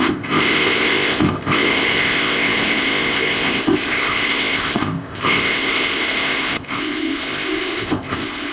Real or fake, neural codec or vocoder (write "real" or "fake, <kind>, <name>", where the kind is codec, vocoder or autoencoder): fake, codec, ZipCodec